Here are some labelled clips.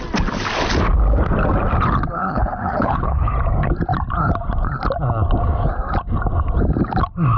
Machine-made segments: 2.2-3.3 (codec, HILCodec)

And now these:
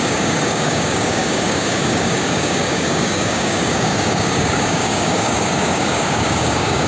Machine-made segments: 0.0-6.9 (codec, DAC)

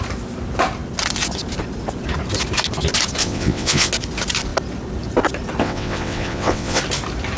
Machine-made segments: 3.2-3.9 (vocoder, WaveNeXt); 5.6-6.8

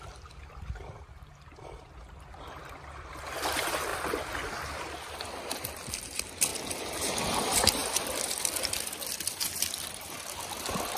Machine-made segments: 0.0-3.9 (vocoder, BigVGAN v2); 5.1-6.5; 7.2-11.0

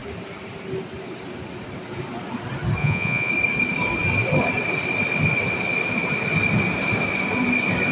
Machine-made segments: 2.8-3.3 (vocoder, Vocos)

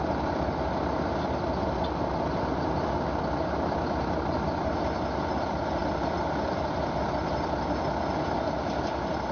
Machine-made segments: none

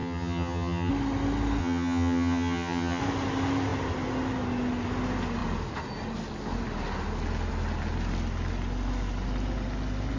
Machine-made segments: 0.0-0.9 (vocoder, HiFi-GAN); 1.6-3.0